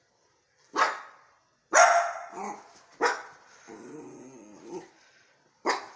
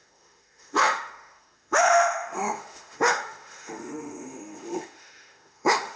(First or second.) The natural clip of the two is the first